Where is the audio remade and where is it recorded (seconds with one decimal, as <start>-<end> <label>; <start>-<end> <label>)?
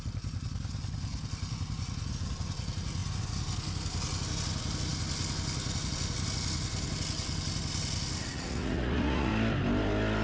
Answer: 0.0-8.2 recorded; 8.2-9.3 remade; 9.3-10.2 recorded